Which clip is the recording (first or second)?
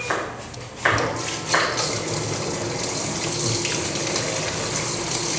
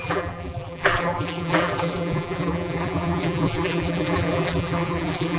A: first